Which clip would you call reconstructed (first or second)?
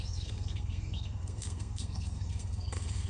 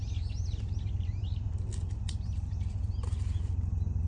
first